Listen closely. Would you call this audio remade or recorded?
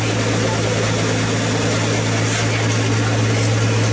recorded